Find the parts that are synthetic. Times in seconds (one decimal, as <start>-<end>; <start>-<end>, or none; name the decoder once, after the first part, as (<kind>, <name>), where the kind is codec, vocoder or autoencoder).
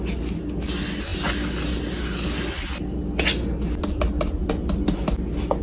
none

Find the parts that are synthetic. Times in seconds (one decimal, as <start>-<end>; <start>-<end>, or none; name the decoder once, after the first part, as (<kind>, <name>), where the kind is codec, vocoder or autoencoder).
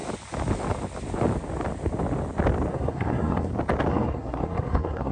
2.7-3.5 (codec, SNAC); 3.9-5.1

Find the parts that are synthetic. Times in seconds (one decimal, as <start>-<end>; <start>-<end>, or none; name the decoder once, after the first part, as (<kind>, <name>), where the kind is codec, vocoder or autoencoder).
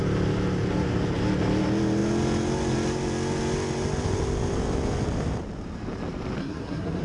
6.4-7.0 (codec, SNAC)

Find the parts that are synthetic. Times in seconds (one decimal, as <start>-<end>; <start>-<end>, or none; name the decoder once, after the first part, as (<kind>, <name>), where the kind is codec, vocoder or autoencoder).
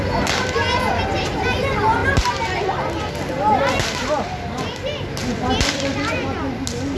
none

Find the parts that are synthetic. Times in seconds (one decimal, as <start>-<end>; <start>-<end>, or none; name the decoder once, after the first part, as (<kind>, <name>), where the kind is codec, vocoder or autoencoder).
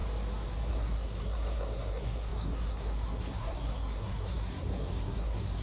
0.7-5.6 (codec, SNAC)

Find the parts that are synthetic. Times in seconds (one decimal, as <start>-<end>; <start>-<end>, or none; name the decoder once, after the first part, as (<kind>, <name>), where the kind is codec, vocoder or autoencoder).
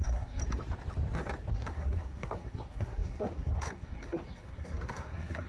0.0-0.4 (codec, SNAC); 1.5-5.5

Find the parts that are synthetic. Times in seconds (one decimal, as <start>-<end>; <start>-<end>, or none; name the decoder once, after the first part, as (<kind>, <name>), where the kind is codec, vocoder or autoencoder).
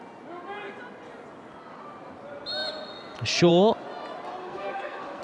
4.4-5.2 (codec, SNAC)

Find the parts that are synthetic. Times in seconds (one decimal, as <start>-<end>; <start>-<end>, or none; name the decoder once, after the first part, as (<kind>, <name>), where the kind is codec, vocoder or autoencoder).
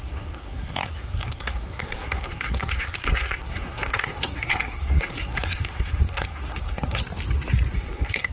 0.0-7.0 (codec, SNAC); 7.7-8.3